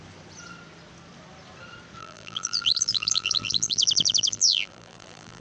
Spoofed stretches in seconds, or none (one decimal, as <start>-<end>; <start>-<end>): 2.0-5.4